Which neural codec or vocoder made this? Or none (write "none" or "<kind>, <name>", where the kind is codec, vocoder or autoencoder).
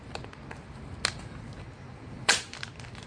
none